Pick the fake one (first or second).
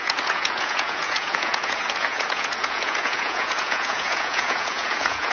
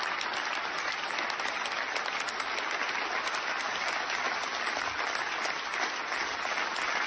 first